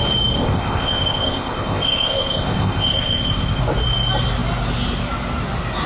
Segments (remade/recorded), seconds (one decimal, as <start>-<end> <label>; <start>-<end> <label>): 0.0-0.4 recorded; 0.4-3.6 remade; 3.6-5.9 recorded